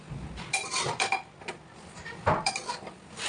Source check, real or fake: fake